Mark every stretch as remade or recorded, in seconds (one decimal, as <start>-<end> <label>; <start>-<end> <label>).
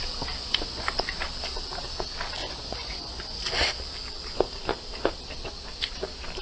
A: 0.0-0.4 recorded; 0.4-0.9 remade; 0.9-2.4 recorded; 2.4-3.5 remade; 3.5-6.4 recorded